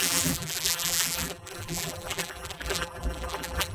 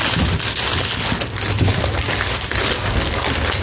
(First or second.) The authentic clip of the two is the second